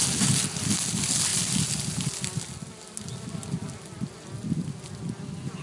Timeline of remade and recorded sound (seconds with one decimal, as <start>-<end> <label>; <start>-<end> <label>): 0.0-5.6 recorded

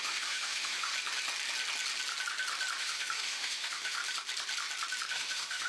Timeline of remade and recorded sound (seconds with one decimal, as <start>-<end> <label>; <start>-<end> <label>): 0.0-0.9 remade; 0.9-2.8 recorded; 2.8-4.0 remade; 4.0-5.1 recorded; 5.1-5.7 remade

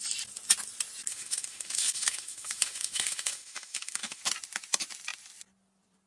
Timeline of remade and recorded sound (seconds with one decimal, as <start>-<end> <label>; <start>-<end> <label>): 0.0-1.1 recorded; 1.1-4.2 remade; 4.2-6.1 recorded

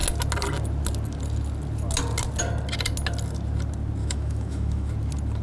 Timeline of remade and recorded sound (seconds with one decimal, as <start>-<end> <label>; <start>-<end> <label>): 0.0-4.0 recorded; 4.0-4.9 remade; 4.9-5.4 recorded

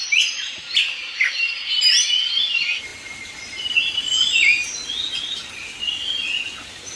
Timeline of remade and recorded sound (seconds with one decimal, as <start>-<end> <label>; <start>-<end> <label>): 0.0-7.0 recorded

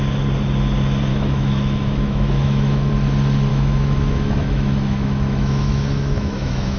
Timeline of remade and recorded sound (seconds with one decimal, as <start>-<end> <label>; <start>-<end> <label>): 0.0-1.1 recorded; 1.1-2.9 remade; 2.9-3.5 recorded; 3.5-6.8 remade

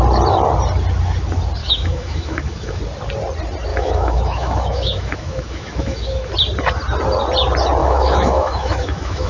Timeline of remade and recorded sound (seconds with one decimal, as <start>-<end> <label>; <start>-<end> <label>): 0.0-1.6 recorded; 1.6-2.8 remade; 2.8-3.7 recorded; 3.7-6.3 remade; 6.3-7.8 recorded; 7.8-9.3 remade

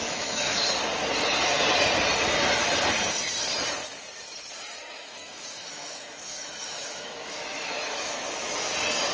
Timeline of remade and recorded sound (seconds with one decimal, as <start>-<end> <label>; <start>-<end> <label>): 0.0-0.6 remade; 0.6-4.6 recorded; 4.6-8.7 remade; 8.7-9.1 recorded